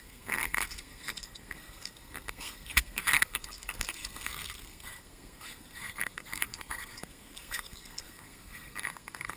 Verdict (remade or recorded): remade